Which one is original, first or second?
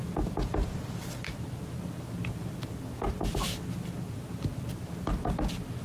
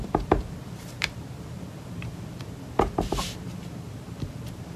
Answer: first